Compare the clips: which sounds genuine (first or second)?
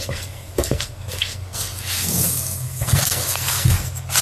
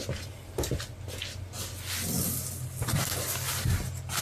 second